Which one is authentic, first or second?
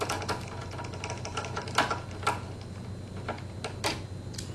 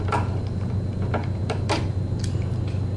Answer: first